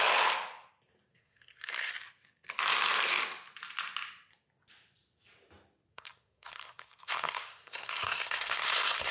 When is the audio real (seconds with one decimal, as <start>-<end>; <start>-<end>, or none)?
0.0-1.1; 1.9-5.9